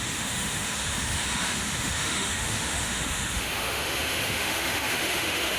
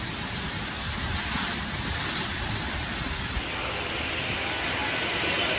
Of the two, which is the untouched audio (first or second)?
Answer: second